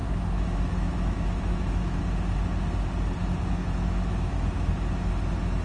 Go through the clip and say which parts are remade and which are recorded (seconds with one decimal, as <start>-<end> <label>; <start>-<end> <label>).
0.0-2.0 remade; 2.0-3.6 recorded; 3.6-4.7 remade; 4.7-5.6 recorded